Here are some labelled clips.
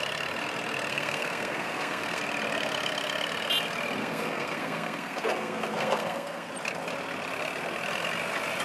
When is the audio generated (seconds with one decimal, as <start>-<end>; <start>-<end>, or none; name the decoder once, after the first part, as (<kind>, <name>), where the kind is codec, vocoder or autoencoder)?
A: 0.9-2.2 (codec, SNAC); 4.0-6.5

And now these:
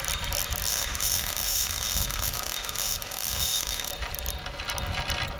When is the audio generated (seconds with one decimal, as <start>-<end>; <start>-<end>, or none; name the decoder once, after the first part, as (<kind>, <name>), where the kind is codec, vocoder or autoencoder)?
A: 0.7-3.9 (autoencoder, DAC-VAE)

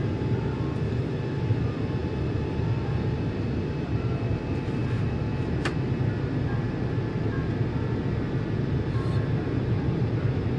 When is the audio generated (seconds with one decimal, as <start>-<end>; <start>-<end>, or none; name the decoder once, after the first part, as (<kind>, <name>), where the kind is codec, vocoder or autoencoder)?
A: 0.0-2.0 (vocoder, BigVGAN v2); 3.6-4.8; 9.6-10.6